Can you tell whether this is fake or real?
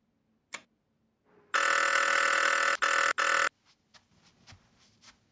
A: real